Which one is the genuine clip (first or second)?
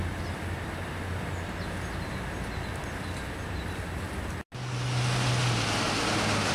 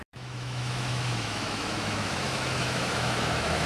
first